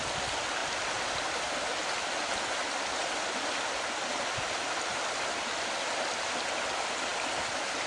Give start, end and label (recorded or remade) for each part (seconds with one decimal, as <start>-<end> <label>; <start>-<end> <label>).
0.0-7.9 recorded